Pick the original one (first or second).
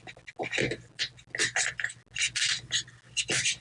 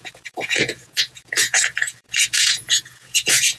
first